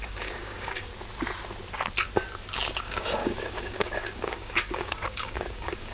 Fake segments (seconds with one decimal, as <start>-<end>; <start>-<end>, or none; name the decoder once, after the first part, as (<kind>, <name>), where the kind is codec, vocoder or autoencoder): 0.0-0.9 (codec, DAC); 2.8-5.9